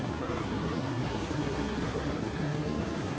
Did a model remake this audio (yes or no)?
yes